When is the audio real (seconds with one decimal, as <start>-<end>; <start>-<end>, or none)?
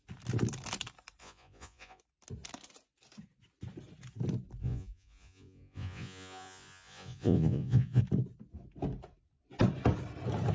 0.0-1.2; 2.0-4.6; 8.0-10.5